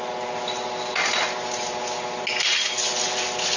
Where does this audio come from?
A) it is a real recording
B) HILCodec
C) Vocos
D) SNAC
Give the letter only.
A